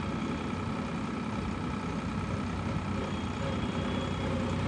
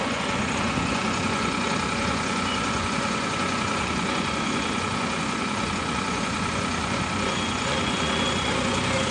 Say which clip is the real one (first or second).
first